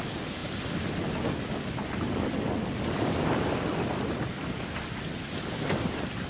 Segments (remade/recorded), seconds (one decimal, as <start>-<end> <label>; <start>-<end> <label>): 0.0-6.3 recorded